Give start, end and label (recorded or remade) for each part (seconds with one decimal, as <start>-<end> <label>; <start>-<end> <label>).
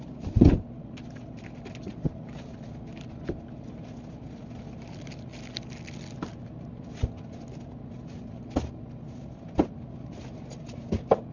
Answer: 0.0-11.3 recorded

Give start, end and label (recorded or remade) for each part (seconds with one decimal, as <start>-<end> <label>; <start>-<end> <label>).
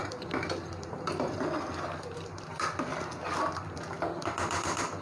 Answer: 0.0-5.0 remade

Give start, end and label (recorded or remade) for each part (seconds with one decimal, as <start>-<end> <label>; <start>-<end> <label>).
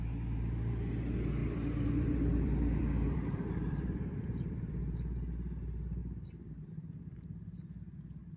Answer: 0.0-1.4 recorded; 1.4-4.8 remade; 4.8-6.0 recorded; 6.0-6.7 remade; 6.7-8.4 recorded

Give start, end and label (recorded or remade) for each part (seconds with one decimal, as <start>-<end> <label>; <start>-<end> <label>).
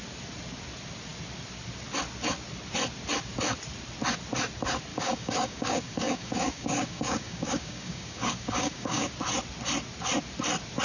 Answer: 0.0-4.9 recorded; 4.9-9.1 remade; 9.1-10.8 recorded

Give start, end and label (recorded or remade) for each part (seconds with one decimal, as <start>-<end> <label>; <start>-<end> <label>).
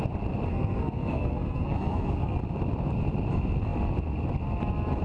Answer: 0.0-0.5 recorded; 0.5-2.4 remade; 2.4-5.0 recorded